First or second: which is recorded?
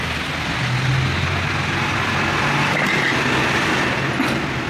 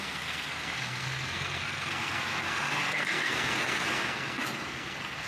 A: first